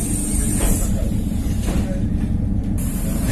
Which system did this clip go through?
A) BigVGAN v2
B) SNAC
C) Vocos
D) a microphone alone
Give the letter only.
A